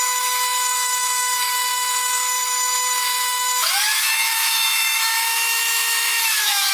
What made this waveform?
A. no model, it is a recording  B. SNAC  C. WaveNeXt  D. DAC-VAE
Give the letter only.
D